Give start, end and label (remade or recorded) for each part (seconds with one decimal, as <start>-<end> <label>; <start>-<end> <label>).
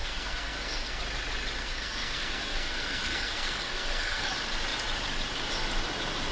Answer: 0.0-1.0 remade; 1.0-1.6 recorded; 1.6-4.3 remade; 4.3-6.3 recorded